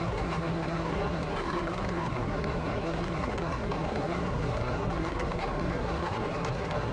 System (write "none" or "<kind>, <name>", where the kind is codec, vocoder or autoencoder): codec, SNAC